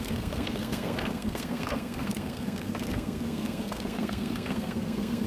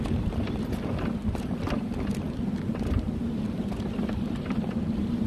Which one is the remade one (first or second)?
first